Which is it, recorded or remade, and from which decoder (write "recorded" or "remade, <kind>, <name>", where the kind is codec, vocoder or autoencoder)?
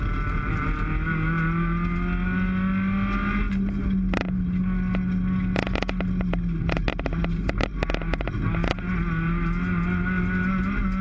recorded